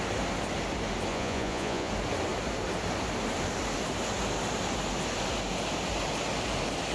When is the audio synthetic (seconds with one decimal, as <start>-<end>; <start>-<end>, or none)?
1.1-1.9